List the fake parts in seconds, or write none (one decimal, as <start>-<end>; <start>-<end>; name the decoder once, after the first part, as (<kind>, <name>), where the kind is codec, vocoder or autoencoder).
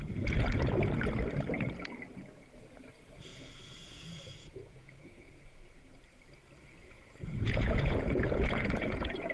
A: 3.3-6.0 (vocoder, Vocos); 6.8-9.3